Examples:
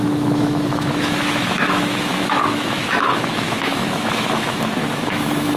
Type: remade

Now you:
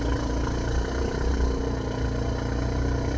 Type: recorded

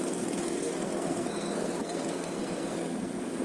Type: remade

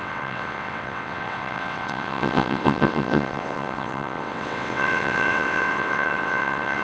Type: remade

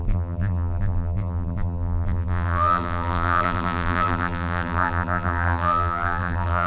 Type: remade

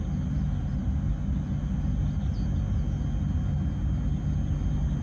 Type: recorded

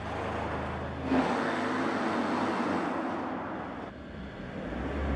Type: recorded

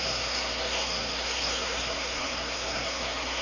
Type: remade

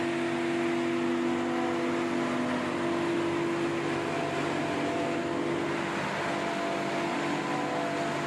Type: recorded